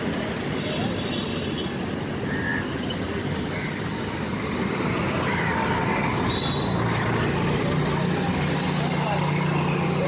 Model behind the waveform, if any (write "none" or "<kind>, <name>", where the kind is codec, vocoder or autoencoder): none